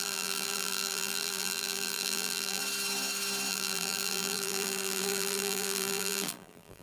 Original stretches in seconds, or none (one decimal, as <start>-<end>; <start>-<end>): 2.6-3.5